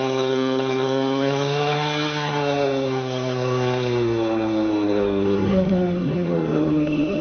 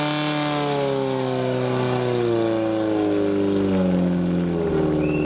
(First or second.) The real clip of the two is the second